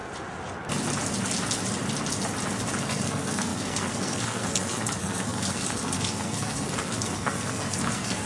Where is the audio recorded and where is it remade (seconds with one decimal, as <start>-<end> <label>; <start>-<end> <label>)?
0.0-2.8 recorded; 2.8-8.3 remade